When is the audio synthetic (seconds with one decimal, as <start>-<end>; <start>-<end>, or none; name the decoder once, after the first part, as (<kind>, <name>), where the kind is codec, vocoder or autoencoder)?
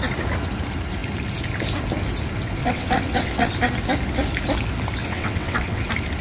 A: 2.6-3.5 (vocoder, WaveNeXt); 5.0-5.8